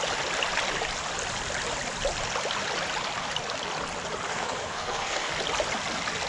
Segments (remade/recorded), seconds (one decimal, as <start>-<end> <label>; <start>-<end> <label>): 0.0-4.3 recorded; 4.3-5.3 remade; 5.3-6.3 recorded